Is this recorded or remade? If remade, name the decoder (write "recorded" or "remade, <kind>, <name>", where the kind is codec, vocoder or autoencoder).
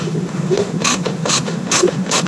remade, autoencoder, DAC-VAE